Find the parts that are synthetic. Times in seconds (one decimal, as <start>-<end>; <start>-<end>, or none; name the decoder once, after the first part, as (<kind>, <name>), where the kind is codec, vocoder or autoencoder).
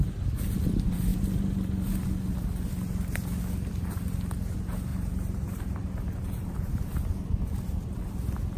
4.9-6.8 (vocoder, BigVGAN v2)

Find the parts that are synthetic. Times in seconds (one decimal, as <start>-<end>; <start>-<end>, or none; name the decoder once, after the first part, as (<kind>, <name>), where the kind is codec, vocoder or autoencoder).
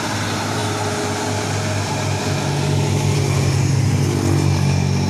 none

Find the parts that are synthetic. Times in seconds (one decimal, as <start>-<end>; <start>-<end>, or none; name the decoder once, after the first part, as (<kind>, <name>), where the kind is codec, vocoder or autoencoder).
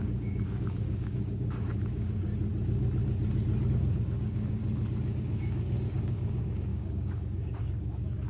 0.0-2.3 (codec, DAC); 3.7-4.6; 5.2-8.3